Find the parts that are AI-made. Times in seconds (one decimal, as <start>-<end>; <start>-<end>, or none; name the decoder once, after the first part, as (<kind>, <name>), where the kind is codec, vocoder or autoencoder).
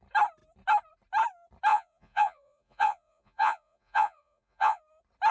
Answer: 1.7-4.8 (vocoder, Vocos)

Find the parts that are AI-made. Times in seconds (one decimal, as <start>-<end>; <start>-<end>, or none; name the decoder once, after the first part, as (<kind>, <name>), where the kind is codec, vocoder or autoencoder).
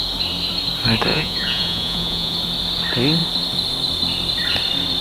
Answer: 1.1-2.3 (vocoder, Vocos)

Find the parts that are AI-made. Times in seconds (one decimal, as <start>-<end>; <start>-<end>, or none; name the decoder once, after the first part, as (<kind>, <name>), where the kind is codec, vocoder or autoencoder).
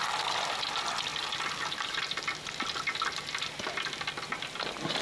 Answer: none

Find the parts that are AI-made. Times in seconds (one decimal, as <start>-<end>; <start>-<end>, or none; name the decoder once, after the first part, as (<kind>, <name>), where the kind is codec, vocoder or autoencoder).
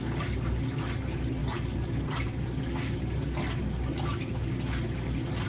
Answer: none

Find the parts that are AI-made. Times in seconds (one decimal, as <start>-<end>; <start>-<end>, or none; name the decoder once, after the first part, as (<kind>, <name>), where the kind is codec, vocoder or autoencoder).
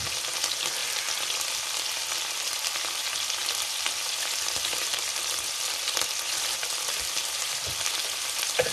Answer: 7.2-7.7 (vocoder, BigVGAN v2)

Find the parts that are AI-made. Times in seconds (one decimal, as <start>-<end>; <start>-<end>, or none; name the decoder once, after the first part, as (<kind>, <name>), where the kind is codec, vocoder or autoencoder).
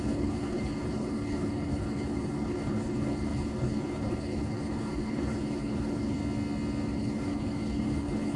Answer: 0.0-6.2 (codec, HILCodec); 6.9-8.4